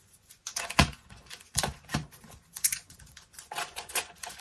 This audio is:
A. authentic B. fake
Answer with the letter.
B